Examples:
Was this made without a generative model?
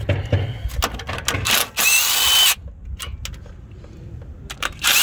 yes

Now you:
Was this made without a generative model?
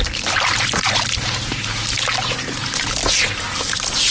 yes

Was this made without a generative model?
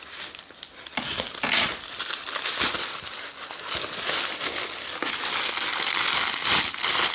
yes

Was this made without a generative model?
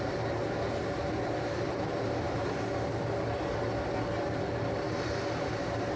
yes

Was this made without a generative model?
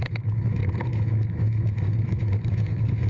no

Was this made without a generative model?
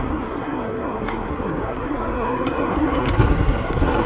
no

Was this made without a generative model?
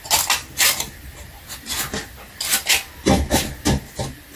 yes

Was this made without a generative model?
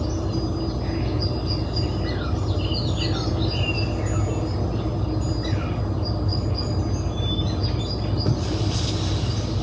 yes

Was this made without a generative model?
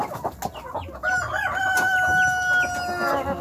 yes